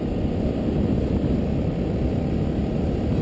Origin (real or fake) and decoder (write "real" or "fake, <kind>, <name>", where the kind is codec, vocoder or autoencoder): real